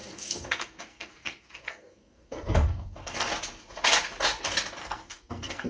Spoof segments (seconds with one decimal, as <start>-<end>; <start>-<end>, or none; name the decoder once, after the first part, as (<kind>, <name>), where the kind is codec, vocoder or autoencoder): 0.0-3.3 (codec, SNAC); 4.8-5.7